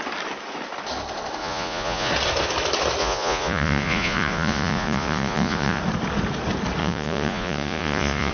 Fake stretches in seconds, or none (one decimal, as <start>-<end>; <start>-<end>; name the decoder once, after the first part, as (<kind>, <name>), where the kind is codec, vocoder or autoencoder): 1.4-2.1 (vocoder, Vocos); 3.0-5.8; 6.8-8.3